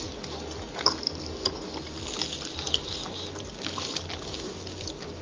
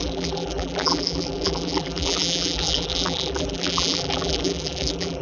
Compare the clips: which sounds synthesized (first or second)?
second